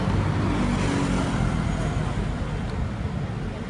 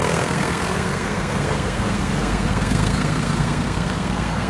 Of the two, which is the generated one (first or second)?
second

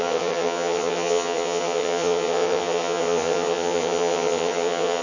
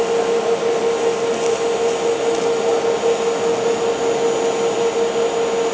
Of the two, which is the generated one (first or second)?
first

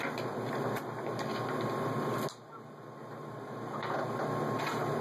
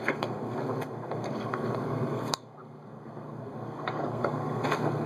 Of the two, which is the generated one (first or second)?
second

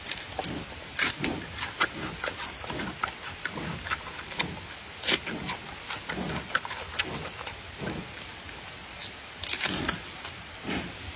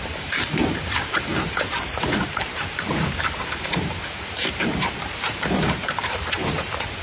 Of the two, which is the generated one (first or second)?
second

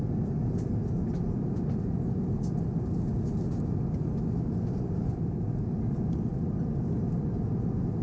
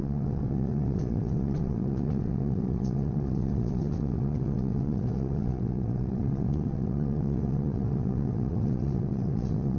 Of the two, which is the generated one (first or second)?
second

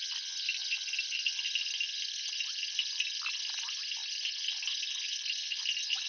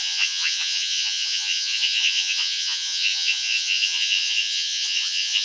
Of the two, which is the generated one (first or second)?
second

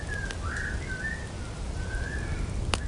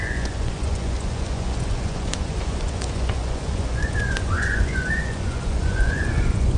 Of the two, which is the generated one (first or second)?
second